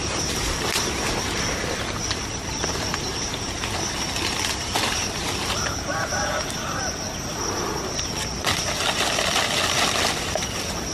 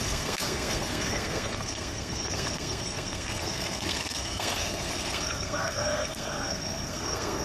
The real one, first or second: first